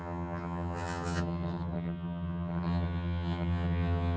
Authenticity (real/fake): fake